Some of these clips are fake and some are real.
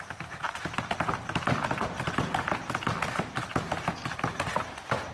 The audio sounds real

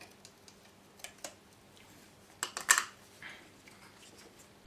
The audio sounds real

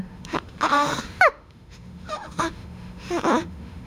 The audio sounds fake